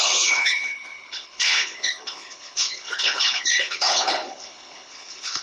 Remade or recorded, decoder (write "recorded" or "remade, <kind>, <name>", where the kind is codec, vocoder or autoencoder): remade, codec, HILCodec